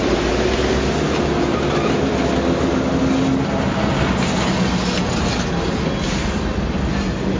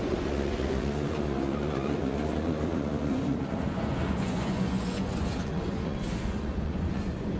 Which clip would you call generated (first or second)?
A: second